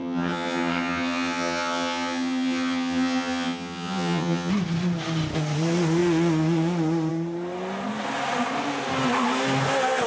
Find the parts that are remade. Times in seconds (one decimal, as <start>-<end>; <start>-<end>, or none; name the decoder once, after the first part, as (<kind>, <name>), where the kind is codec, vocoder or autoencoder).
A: 0.0-4.5 (vocoder, HiFi-GAN)